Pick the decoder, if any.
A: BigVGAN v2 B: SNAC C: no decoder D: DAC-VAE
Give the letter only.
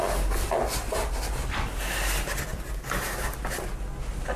C